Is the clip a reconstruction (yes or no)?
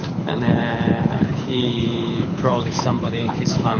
yes